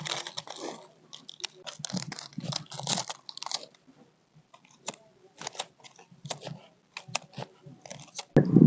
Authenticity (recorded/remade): recorded